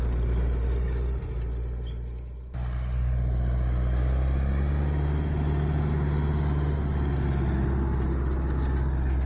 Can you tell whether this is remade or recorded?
recorded